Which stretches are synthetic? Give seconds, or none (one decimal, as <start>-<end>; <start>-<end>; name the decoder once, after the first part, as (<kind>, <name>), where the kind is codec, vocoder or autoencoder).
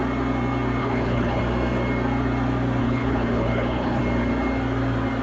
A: 0.8-1.4 (codec, HILCodec); 2.8-4.0